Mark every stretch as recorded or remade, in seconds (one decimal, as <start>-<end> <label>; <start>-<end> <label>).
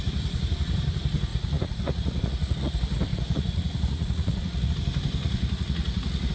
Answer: 0.0-1.3 recorded; 1.3-2.7 remade; 2.7-3.1 recorded; 3.1-4.7 remade; 4.7-5.2 recorded; 5.2-6.3 remade